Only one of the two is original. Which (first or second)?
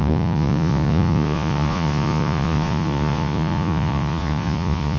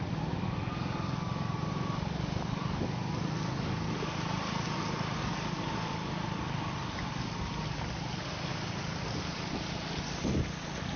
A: second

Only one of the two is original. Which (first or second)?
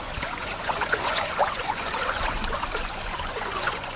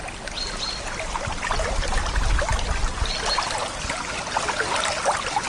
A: second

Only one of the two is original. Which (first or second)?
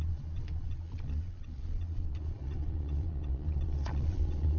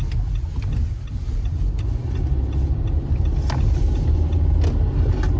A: second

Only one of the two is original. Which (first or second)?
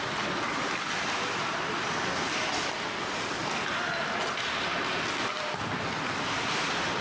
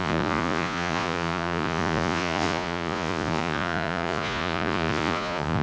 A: first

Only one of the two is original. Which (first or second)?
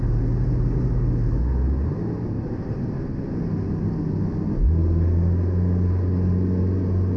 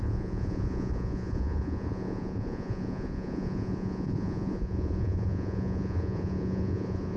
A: first